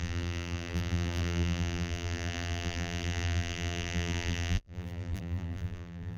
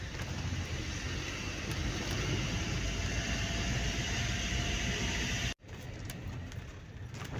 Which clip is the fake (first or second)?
first